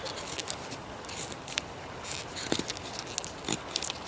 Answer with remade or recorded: recorded